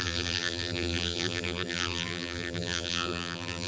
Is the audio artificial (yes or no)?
yes